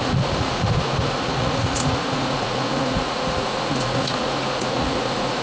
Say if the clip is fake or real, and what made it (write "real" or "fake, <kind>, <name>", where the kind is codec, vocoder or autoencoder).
fake, vocoder, Vocos